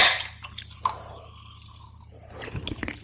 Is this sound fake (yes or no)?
no